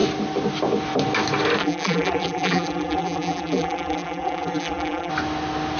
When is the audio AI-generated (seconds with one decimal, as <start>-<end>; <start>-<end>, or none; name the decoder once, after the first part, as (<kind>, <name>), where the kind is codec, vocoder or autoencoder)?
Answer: 1.6-5.1 (vocoder, BigVGAN v2)